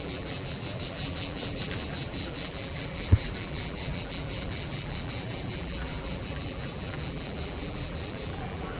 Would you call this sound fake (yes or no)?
yes